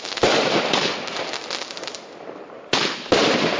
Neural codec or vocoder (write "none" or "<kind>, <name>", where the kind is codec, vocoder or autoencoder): none